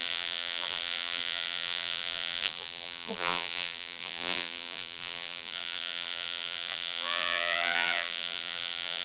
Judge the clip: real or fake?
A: fake